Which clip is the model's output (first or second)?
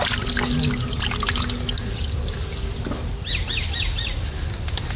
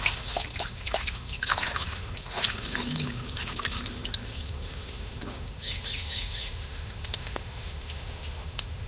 second